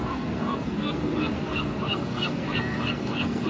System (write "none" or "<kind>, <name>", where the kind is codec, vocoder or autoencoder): codec, SNAC